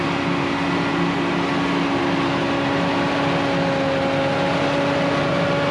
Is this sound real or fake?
real